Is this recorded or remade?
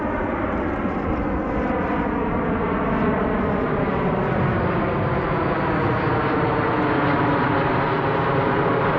recorded